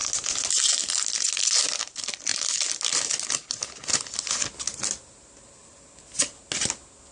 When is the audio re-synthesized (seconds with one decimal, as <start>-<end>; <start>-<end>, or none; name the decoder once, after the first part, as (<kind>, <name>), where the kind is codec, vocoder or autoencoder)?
none